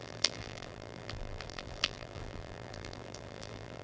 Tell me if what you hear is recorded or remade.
remade